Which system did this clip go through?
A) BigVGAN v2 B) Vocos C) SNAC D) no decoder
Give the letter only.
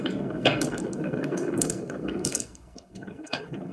C